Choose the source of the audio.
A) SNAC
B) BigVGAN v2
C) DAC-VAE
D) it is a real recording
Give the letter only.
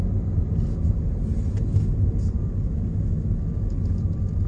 D